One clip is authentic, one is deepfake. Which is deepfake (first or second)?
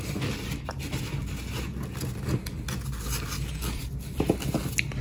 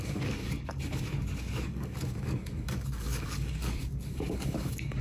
second